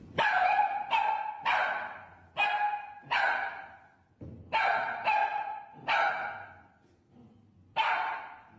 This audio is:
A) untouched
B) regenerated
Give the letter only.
A